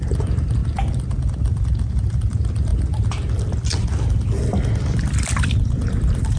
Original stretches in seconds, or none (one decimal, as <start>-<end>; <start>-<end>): 0.6-1.9; 2.7-5.6